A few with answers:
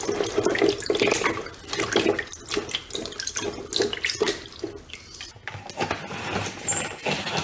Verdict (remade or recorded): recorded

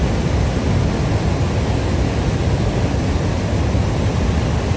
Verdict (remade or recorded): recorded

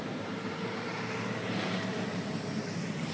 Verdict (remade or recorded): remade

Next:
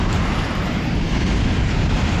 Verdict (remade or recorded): remade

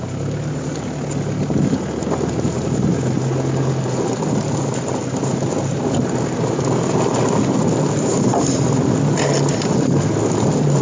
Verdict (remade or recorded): recorded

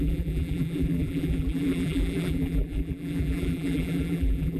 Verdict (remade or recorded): remade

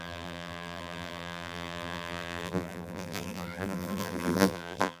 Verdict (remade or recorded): remade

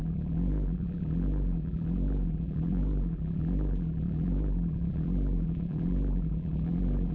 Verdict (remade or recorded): remade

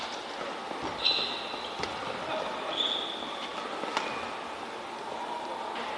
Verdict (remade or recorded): recorded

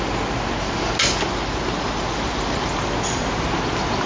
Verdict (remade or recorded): recorded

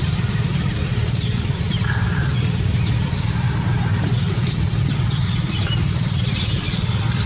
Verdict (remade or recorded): remade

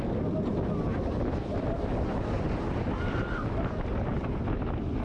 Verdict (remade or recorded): recorded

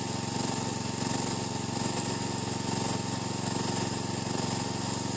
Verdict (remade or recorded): recorded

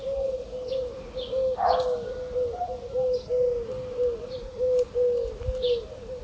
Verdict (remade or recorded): recorded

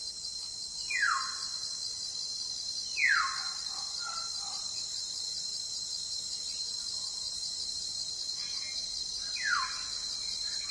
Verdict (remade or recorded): recorded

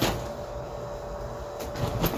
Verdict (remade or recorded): recorded